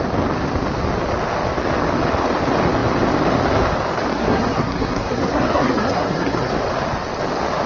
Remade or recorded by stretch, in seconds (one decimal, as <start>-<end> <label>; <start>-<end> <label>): 0.0-4.1 recorded; 4.1-6.5 remade; 6.5-7.7 recorded